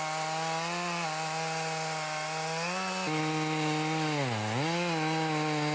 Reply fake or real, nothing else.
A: real